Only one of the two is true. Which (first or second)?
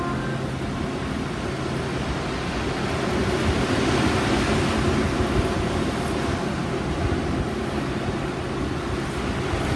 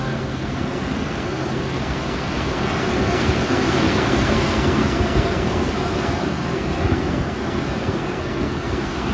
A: first